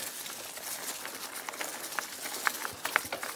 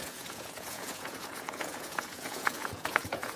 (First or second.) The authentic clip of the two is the first